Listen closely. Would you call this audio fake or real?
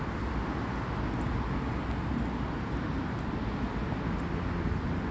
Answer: real